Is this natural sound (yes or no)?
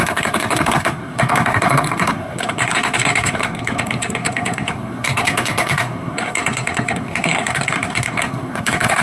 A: no